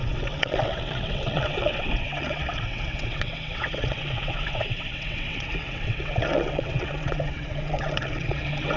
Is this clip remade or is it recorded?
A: remade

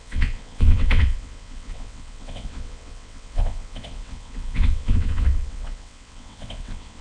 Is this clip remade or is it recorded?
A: remade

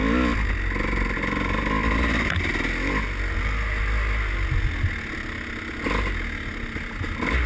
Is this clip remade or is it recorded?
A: recorded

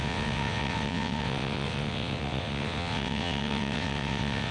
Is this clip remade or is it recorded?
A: remade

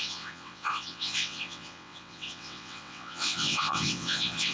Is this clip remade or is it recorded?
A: remade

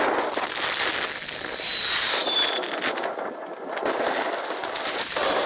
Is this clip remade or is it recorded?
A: recorded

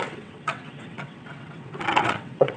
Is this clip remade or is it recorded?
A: remade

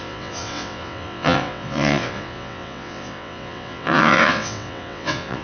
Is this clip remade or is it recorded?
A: remade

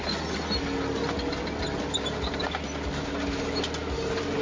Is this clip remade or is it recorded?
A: recorded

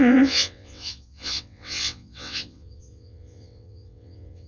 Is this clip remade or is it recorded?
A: remade